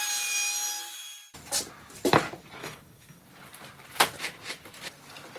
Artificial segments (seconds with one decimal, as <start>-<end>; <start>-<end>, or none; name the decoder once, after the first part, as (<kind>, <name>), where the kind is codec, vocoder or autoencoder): 2.6-3.2 (codec, DAC)